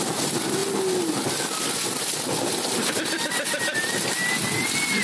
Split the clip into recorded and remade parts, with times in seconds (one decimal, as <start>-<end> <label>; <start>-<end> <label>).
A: 0.0-5.0 recorded

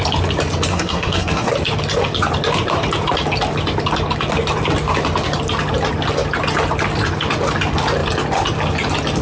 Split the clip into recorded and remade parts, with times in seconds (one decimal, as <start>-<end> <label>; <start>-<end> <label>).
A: 0.0-0.7 recorded; 0.7-1.5 remade; 1.5-9.2 recorded

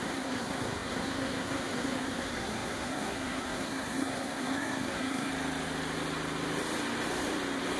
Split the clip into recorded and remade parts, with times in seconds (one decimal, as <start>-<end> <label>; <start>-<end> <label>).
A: 0.0-5.3 remade; 5.3-7.8 recorded

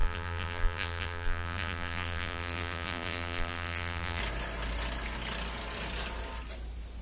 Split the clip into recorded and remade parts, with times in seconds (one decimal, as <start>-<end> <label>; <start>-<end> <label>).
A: 0.0-4.2 remade; 4.2-7.0 recorded

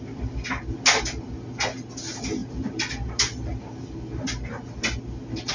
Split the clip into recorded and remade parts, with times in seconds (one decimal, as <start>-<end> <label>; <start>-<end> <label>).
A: 0.0-5.5 recorded

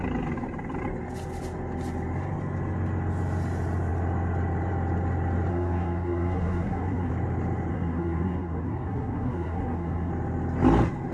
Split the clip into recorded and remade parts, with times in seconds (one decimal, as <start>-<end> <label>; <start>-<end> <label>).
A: 0.0-5.5 recorded; 5.5-7.1 remade; 7.1-7.7 recorded; 7.7-10.1 remade; 10.1-11.1 recorded